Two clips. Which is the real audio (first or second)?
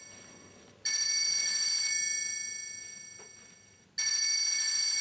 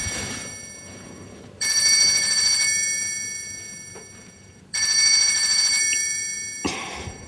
first